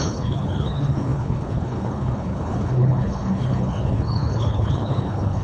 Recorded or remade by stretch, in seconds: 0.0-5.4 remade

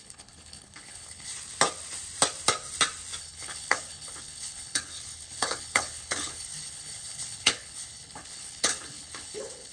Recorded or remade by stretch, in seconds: 0.0-1.3 remade; 1.3-3.2 recorded; 3.2-9.7 remade

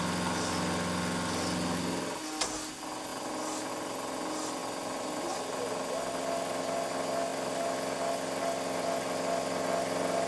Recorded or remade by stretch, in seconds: 0.0-10.3 recorded